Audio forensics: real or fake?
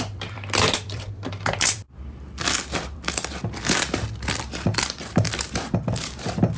fake